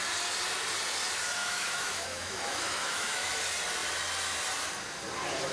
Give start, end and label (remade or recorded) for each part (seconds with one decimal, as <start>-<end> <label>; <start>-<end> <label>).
0.0-1.4 recorded; 1.4-3.3 remade; 3.3-5.5 recorded